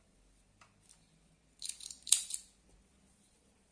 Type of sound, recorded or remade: recorded